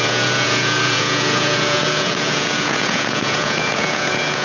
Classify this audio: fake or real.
fake